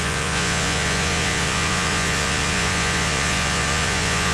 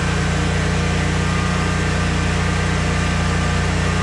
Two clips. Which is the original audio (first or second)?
second